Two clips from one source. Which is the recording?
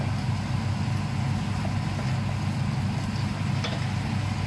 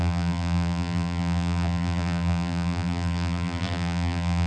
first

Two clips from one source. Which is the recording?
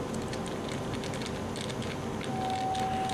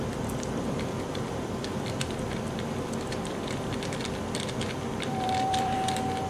first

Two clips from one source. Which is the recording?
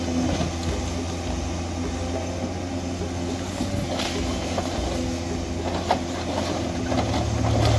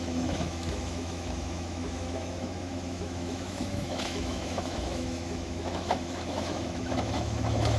first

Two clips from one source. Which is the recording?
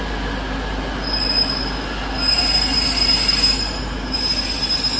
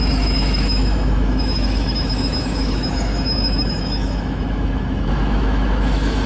first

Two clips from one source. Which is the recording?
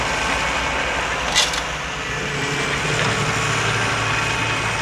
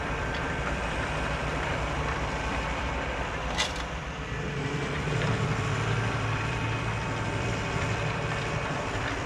first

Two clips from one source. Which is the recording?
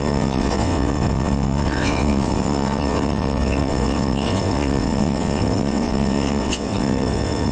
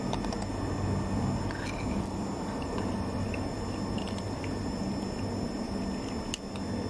second